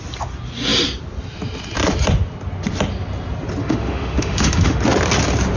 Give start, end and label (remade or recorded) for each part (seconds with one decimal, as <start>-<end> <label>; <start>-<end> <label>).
0.0-3.6 recorded; 3.6-4.8 remade; 4.8-5.6 recorded